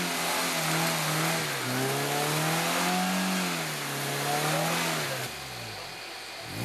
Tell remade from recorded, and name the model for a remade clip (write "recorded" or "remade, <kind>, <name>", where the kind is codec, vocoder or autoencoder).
recorded